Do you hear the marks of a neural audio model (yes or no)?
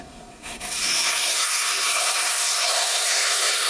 yes